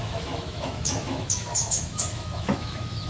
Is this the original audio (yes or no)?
no